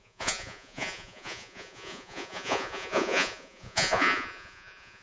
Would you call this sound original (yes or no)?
no